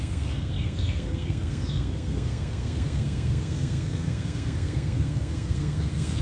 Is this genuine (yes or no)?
no